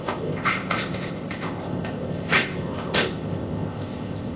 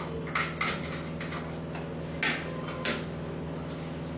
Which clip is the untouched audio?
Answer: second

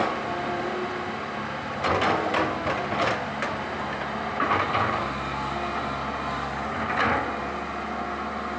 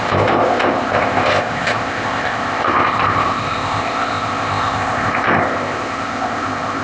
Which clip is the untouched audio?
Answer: first